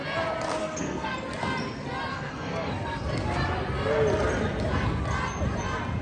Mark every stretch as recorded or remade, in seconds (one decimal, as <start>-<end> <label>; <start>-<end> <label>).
0.0-0.6 recorded; 0.6-1.1 remade; 1.1-2.1 recorded; 2.1-3.1 remade; 3.1-6.0 recorded